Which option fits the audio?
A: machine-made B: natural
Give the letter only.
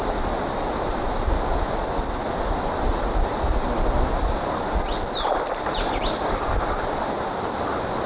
B